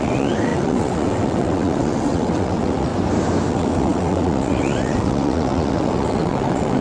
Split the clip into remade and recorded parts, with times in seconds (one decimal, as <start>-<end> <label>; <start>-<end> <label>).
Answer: 0.0-2.9 remade; 2.9-3.5 recorded; 3.5-6.8 remade